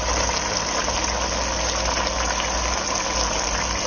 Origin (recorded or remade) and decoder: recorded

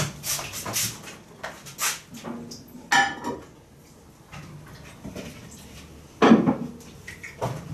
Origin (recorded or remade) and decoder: recorded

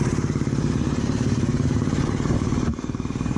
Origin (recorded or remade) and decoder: remade, vocoder, BigVGAN v2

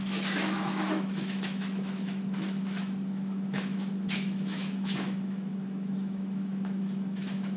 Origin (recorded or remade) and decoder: remade, autoencoder, DAC-VAE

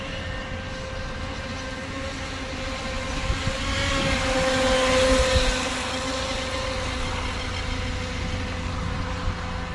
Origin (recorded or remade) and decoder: recorded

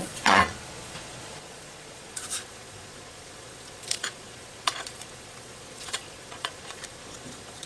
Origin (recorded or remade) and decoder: remade, vocoder, Vocos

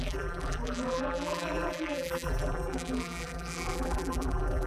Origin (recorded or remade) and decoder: remade, vocoder, BigVGAN v2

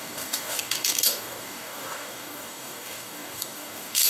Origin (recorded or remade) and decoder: remade, codec, DAC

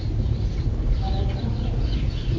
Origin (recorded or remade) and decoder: recorded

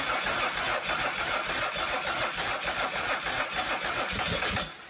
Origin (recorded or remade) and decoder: recorded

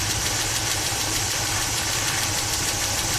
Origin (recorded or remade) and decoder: remade, vocoder, BigVGAN v2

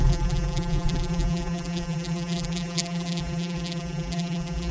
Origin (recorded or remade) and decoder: remade, vocoder, BigVGAN v2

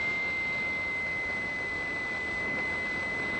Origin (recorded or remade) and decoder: recorded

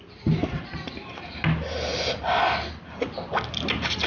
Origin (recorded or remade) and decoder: recorded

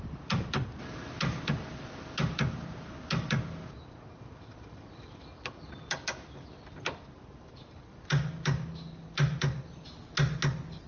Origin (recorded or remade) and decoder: recorded